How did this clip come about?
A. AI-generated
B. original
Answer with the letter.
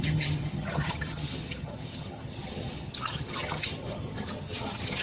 A